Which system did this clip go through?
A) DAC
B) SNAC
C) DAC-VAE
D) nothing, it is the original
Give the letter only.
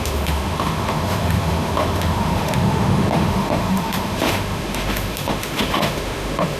C